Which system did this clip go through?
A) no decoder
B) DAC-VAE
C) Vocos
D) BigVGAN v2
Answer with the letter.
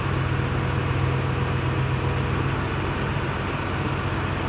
A